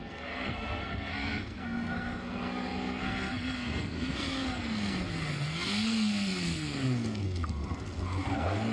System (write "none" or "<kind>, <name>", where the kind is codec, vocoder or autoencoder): codec, SNAC